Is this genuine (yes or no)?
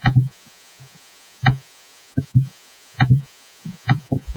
no